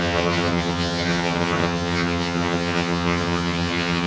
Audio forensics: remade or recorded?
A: remade